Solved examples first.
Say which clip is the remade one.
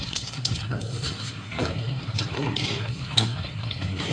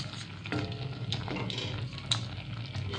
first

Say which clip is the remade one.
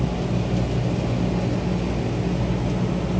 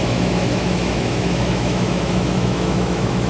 second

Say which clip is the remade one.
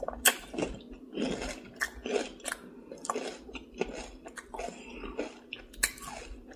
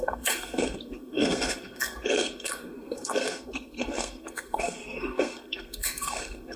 second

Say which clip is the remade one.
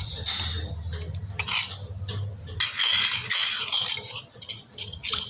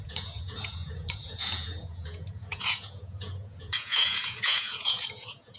second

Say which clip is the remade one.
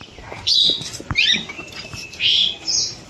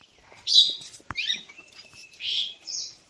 second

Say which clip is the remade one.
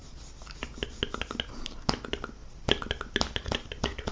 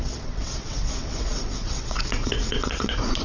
second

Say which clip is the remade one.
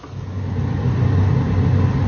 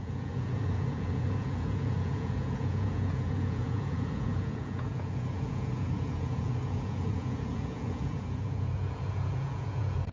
second